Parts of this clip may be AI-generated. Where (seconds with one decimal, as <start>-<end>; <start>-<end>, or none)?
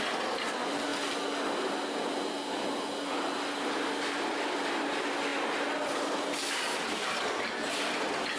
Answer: none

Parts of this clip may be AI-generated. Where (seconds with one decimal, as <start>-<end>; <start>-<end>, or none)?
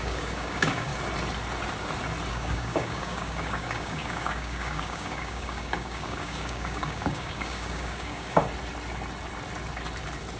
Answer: 0.0-0.9; 2.3-8.4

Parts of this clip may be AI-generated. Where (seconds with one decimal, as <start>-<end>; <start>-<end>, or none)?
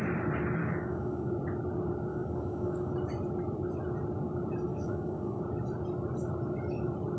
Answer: 0.6-1.3; 2.1-2.9; 4.7-5.4